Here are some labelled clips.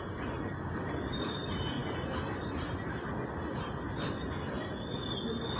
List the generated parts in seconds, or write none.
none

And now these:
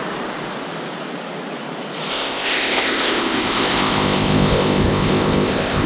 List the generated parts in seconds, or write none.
2.1-5.9 (codec, ZipCodec)

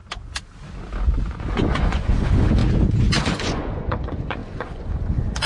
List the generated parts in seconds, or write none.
1.2-2.6 (vocoder, Vocos); 3.1-5.5

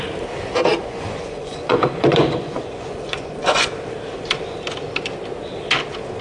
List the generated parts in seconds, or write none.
0.8-3.7 (vocoder, Vocos)

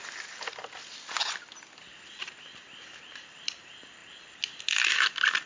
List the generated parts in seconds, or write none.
none

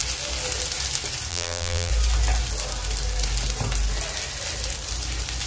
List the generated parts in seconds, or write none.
1.3-1.9 (vocoder, BigVGAN v2)

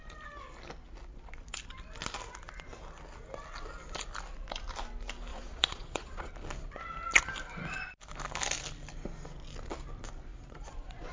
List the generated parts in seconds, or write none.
5.3-6.3 (vocoder, Vocos); 10.3-11.1